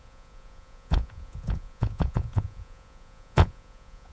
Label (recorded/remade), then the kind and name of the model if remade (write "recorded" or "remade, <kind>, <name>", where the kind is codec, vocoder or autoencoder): remade, vocoder, Vocos